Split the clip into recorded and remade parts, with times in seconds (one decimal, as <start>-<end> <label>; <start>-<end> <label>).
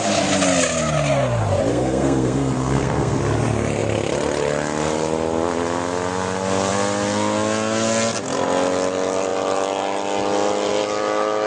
0.0-1.7 recorded; 1.7-3.2 remade; 3.2-11.5 recorded